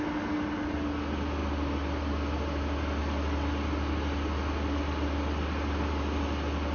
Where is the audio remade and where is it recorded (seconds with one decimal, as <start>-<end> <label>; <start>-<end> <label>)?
0.0-6.7 recorded